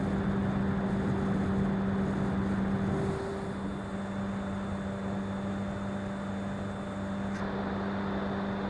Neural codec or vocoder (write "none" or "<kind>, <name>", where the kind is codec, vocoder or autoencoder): none